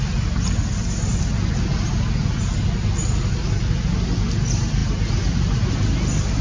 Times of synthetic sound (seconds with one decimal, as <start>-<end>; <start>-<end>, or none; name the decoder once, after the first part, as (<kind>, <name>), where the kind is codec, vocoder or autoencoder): none